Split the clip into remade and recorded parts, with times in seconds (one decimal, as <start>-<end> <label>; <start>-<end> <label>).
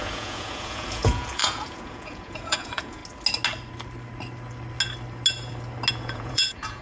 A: 0.0-3.0 remade; 3.0-5.9 recorded; 5.9-6.8 remade